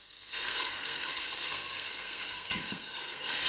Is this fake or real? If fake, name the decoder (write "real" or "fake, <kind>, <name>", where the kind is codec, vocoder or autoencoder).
fake, codec, SNAC